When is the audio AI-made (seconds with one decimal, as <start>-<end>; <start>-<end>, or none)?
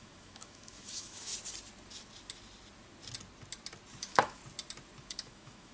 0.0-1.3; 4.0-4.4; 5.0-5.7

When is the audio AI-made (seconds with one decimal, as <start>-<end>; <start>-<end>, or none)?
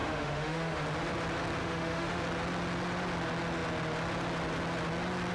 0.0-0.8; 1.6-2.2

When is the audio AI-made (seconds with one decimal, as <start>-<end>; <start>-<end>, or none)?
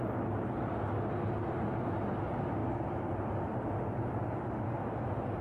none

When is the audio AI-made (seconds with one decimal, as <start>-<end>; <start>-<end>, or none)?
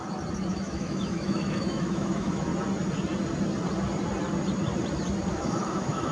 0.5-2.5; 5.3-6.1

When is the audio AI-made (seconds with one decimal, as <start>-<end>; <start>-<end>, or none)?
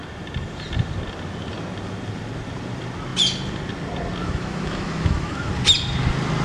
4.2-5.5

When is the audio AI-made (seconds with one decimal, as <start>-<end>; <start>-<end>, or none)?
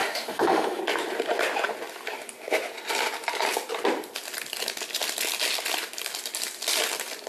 0.0-0.8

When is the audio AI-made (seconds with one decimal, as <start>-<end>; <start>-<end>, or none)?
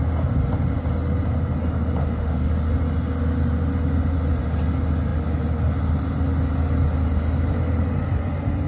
2.0-2.5